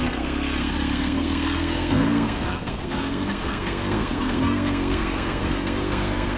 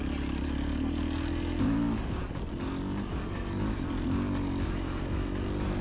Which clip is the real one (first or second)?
second